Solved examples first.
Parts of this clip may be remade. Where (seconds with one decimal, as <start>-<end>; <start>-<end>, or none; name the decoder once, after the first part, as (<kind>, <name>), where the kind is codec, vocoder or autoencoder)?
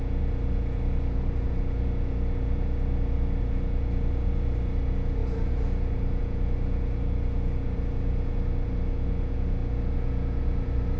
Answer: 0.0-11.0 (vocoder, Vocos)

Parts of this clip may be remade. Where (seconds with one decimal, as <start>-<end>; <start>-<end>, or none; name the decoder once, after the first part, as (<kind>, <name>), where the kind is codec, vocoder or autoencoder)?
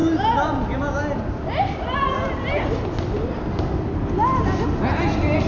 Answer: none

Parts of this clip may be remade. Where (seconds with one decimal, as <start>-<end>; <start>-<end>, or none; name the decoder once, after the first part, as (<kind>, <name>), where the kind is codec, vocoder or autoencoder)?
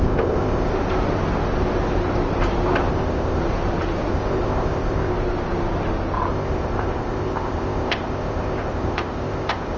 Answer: 0.0-0.7 (codec, ZipCodec); 2.9-3.4; 4.1-5.1; 6.3-9.8